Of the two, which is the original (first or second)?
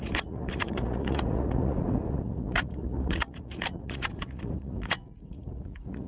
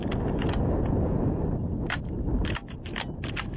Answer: second